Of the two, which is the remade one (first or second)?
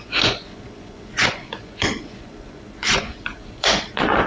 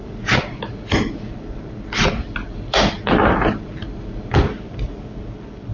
first